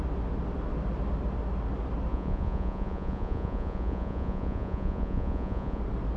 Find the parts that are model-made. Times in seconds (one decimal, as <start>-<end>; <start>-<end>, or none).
2.1-5.8